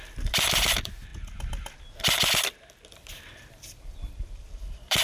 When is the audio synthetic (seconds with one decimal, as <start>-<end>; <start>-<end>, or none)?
0.0-1.1; 2.9-5.0